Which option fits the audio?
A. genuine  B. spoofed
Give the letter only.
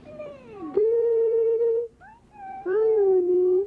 B